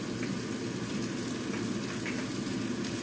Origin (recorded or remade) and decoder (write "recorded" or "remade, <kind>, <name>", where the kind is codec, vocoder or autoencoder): recorded